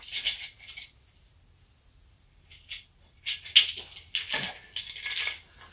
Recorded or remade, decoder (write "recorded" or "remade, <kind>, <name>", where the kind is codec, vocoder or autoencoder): recorded